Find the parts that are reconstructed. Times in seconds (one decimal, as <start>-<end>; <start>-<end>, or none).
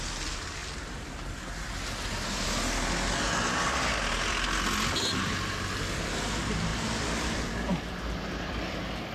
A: none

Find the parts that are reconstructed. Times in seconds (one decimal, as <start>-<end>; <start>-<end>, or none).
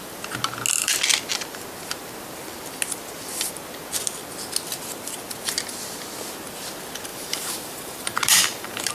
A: 7.1-8.9